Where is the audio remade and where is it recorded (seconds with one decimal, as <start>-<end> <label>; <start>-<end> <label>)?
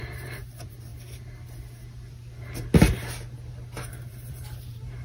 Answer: 0.0-0.9 remade; 0.9-3.9 recorded; 3.9-5.0 remade